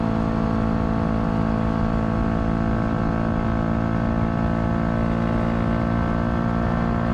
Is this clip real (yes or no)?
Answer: yes